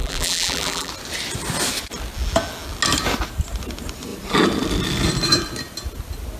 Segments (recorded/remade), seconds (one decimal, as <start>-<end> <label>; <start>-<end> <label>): 0.0-0.9 remade; 0.9-6.4 recorded